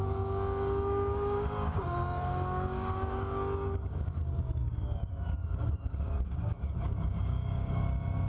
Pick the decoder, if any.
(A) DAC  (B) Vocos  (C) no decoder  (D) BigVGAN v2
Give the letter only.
A